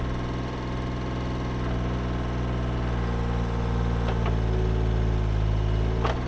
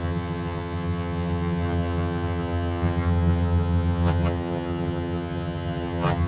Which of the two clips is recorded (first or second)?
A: first